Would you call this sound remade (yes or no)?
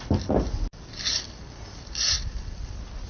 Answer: no